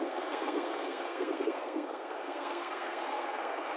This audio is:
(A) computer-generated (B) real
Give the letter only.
A